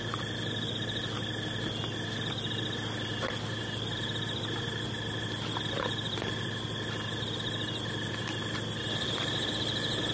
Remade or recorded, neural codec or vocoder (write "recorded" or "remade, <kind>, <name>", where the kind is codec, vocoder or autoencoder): recorded